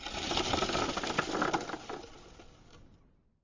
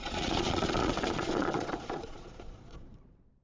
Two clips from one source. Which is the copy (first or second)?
second